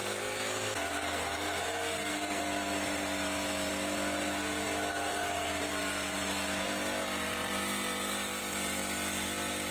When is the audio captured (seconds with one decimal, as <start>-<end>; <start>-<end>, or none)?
2.4-4.9; 5.6-9.7